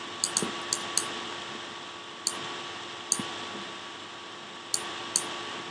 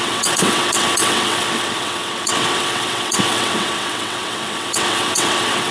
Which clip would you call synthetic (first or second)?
second